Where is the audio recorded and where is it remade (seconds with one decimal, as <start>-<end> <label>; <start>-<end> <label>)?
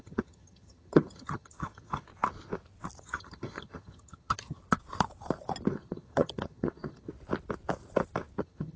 0.0-2.1 remade; 2.1-3.0 recorded; 3.0-4.6 remade; 4.6-5.7 recorded; 5.7-7.1 remade; 7.1-8.4 recorded; 8.4-8.8 remade